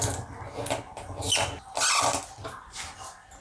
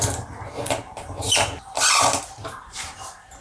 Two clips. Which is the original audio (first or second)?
first